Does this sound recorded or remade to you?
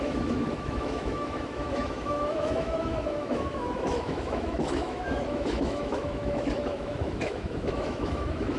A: remade